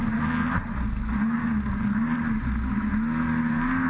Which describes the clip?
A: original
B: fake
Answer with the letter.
A